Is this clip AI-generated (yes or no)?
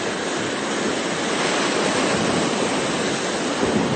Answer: no